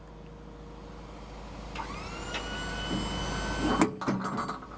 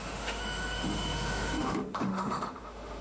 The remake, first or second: second